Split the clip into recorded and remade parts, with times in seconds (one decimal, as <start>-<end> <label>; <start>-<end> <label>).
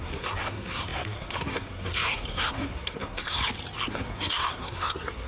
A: 0.0-3.4 remade; 3.4-3.9 recorded; 3.9-5.3 remade